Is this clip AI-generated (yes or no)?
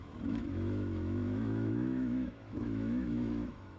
yes